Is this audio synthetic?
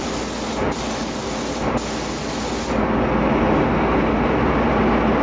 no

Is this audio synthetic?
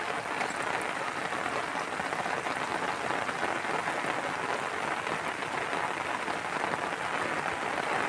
no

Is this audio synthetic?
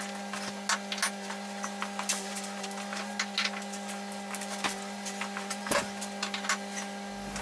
no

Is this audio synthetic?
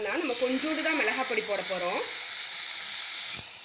no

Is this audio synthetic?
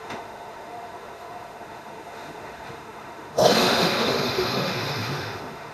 yes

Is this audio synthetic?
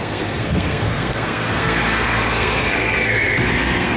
yes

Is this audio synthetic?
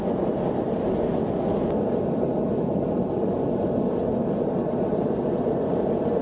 no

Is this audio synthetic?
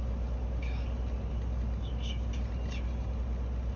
no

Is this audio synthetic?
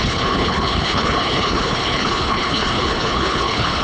yes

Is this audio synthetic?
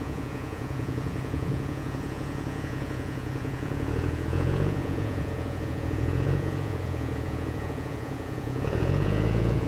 yes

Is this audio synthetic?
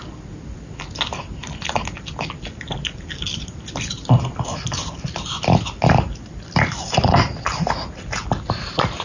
no